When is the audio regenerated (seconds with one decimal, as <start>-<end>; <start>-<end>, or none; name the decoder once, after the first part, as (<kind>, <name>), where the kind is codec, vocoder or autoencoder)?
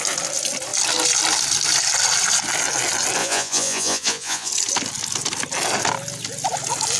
3.2-4.5 (vocoder, Vocos)